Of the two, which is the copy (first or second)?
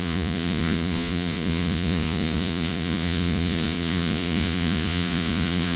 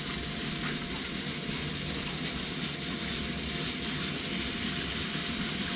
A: first